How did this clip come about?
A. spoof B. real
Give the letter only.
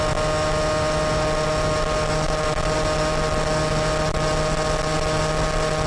B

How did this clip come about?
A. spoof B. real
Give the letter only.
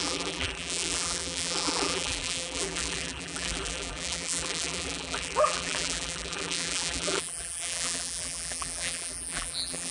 A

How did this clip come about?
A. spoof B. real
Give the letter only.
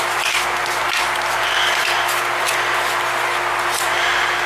B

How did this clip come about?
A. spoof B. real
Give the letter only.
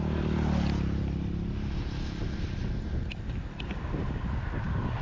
B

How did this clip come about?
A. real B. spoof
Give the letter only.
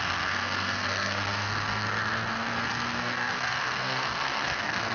B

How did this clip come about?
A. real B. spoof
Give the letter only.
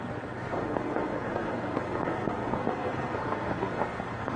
B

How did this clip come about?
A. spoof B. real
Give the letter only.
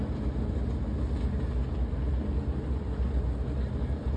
B